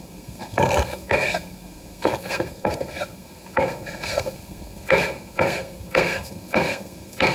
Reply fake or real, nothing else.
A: fake